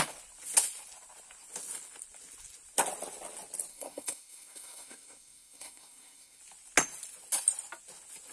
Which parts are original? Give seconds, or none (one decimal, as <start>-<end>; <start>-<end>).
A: 0.0-3.7; 6.4-8.3

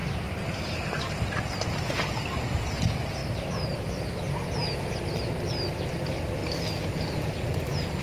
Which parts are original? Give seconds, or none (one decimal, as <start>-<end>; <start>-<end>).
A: 0.0-8.0